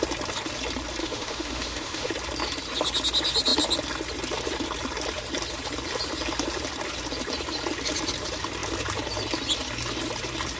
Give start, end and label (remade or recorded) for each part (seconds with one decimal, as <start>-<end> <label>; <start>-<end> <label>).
0.0-1.0 recorded; 1.0-2.1 remade; 2.1-10.6 recorded